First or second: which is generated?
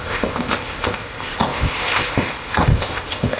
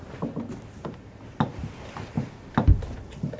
first